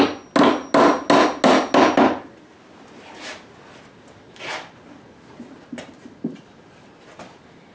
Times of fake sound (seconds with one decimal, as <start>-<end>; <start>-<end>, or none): none